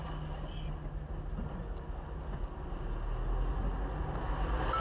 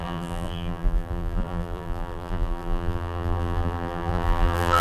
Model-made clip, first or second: second